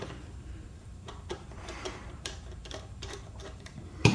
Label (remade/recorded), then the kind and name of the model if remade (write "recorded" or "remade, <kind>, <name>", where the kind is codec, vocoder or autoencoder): remade, vocoder, BigVGAN v2